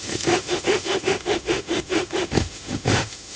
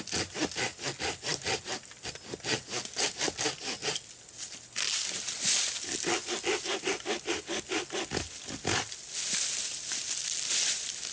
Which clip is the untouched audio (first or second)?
second